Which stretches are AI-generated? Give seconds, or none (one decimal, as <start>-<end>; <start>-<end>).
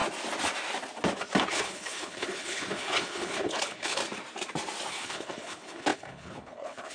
1.5-4.0; 4.9-6.9